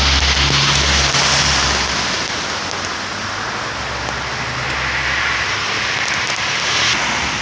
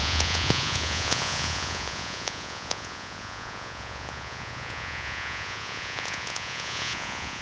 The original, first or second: first